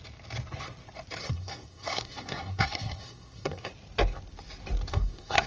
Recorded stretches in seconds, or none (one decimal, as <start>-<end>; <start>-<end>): 0.0-1.2; 3.7-4.9